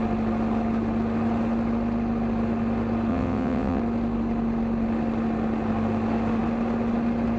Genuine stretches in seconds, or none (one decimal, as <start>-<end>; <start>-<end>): 0.0-3.1; 3.8-7.4